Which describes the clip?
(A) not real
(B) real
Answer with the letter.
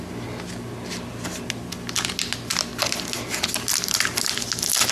B